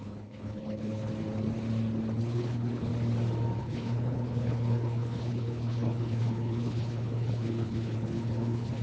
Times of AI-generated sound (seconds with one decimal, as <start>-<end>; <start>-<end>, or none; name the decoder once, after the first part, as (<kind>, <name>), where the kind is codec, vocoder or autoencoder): 0.0-1.1 (codec, HILCodec); 2.2-2.9; 3.6-8.8